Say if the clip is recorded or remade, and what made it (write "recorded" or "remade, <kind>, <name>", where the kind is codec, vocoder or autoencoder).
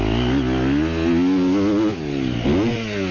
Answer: recorded